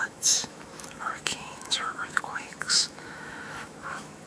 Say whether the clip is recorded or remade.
remade